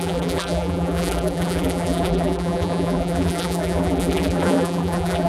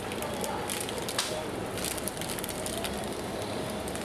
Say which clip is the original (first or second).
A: second